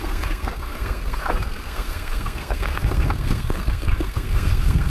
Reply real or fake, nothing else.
fake